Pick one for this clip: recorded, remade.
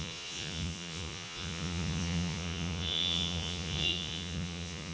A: remade